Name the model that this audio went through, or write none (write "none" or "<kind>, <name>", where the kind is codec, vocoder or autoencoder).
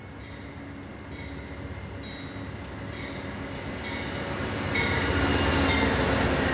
none